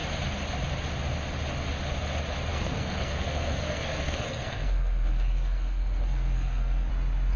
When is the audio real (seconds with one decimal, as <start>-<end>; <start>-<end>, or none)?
0.0-2.5; 6.9-7.4